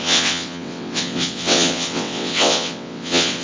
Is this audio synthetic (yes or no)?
yes